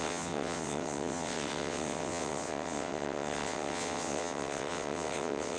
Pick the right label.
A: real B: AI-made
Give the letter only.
B